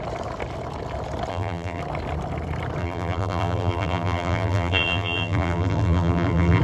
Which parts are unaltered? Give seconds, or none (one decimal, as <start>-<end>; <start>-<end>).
0.0-1.3; 1.8-2.8